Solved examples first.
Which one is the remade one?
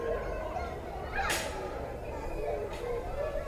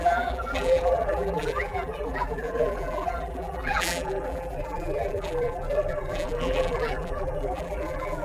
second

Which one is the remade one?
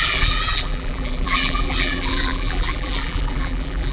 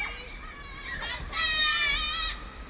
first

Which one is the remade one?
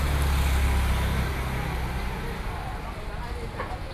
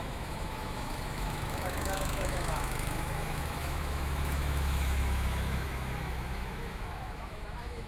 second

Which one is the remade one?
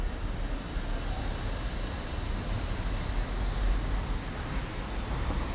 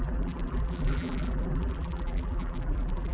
second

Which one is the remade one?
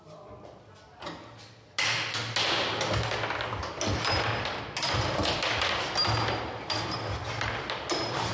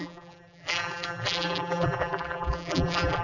second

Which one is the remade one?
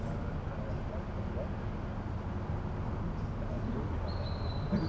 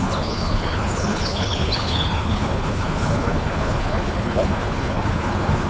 second